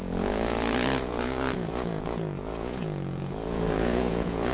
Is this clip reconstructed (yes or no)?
yes